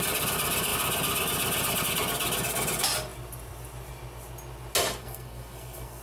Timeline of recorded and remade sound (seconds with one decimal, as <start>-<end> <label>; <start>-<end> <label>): 0.0-5.0 recorded; 5.0-6.0 remade